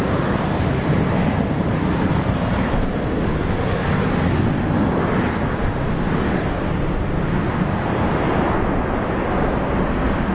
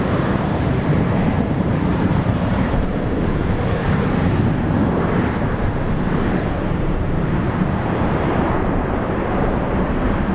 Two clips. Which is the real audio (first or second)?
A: first